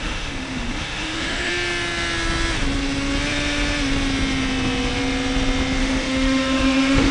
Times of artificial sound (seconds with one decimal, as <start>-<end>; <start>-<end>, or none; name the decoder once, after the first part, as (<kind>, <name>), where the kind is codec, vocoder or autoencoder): 0.0-1.5 (autoencoder, DAC-VAE); 5.8-7.1